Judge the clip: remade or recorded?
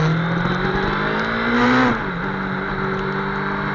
recorded